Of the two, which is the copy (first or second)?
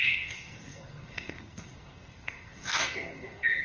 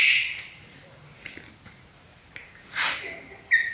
first